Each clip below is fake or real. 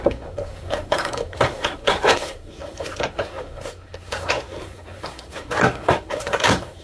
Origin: fake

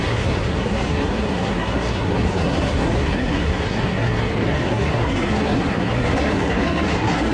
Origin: fake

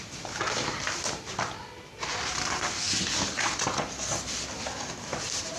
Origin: real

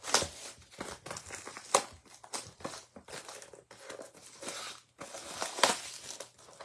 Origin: real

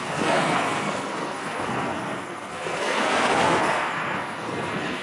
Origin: fake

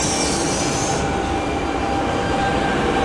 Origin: real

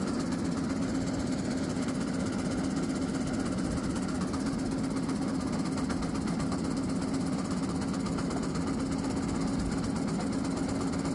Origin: real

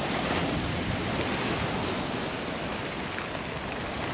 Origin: real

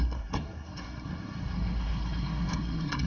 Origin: fake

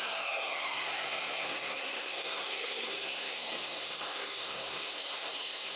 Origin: fake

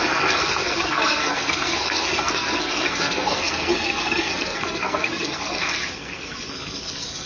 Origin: fake